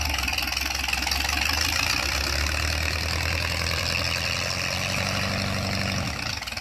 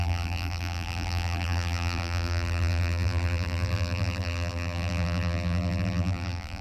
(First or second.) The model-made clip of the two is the second